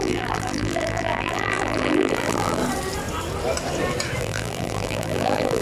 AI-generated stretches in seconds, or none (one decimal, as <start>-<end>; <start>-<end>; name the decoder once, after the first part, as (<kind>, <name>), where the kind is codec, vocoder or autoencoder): 0.0-2.6 (vocoder, BigVGAN v2); 4.2-5.6